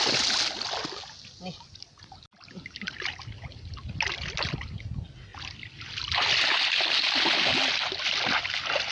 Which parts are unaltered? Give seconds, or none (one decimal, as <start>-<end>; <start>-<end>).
0.0-8.9